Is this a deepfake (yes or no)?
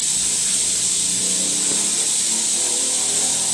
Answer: no